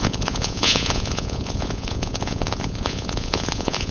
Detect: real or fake fake